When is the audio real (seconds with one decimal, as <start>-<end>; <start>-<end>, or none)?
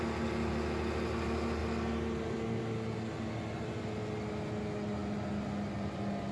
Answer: 0.0-6.3